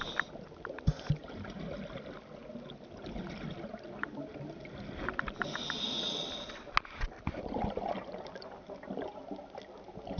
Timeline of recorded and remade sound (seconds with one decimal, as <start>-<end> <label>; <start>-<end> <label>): 0.0-10.2 recorded